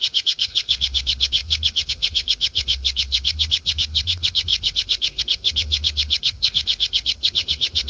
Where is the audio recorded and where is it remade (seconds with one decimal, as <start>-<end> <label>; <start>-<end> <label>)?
0.0-7.9 remade